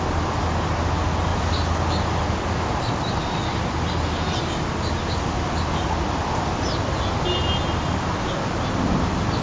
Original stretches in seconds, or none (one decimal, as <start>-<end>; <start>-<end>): 0.0-9.4